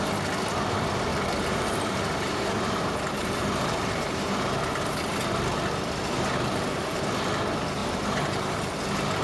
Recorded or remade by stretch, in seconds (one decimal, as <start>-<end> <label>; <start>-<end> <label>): 0.0-1.1 recorded; 1.1-5.0 remade; 5.0-7.8 recorded; 7.8-8.7 remade; 8.7-9.2 recorded